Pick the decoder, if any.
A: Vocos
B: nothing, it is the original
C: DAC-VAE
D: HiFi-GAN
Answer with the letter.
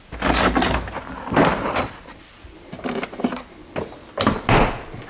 B